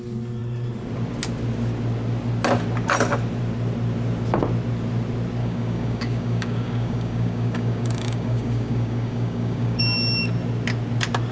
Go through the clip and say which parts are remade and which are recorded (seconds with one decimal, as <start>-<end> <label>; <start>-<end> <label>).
0.0-5.4 recorded; 5.4-9.8 remade; 9.8-11.3 recorded